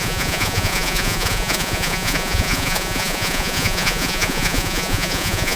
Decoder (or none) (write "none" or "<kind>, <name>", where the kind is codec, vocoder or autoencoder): vocoder, Vocos